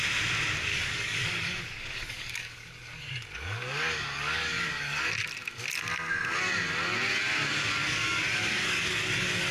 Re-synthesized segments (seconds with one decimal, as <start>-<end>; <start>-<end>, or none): 0.7-5.1; 7.8-9.5